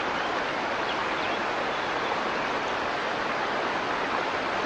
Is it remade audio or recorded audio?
recorded